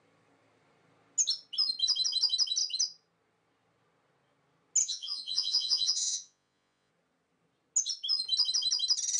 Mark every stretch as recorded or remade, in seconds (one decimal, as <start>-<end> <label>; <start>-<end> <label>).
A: 0.0-4.8 recorded; 4.8-6.9 remade; 6.9-9.2 recorded